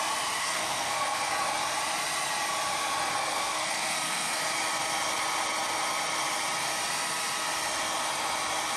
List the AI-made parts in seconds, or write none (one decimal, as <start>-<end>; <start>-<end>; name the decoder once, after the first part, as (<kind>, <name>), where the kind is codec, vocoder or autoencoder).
0.4-1.3 (codec, SNAC); 3.1-4.4